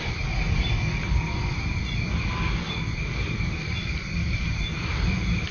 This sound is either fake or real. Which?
real